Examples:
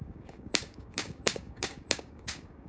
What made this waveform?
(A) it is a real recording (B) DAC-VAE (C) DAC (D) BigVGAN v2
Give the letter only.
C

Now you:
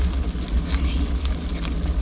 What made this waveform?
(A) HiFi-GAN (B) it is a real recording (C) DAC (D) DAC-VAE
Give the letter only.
B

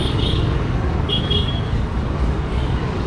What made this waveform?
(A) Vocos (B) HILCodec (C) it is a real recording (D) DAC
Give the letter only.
D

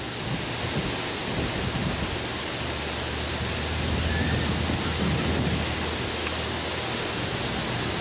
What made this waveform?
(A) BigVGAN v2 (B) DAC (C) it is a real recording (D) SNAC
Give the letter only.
C